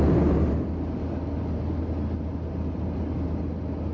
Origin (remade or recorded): recorded